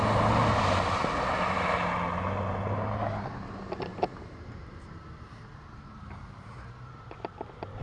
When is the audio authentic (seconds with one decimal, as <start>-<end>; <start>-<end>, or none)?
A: 0.0-3.9